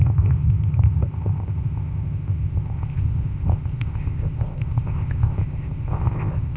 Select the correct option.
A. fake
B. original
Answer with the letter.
A